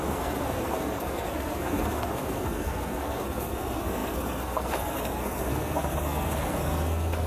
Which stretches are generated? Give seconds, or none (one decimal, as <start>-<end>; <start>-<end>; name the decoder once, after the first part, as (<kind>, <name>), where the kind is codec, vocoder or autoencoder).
0.0-7.3 (codec, SNAC)